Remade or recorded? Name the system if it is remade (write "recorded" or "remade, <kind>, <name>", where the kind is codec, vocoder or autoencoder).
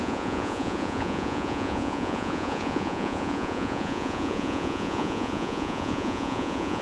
remade, vocoder, Vocos